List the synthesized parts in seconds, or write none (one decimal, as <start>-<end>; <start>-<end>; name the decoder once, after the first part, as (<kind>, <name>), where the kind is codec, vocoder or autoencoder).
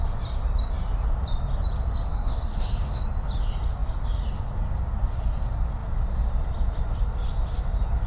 2.1-3.0 (autoencoder, DAC-VAE)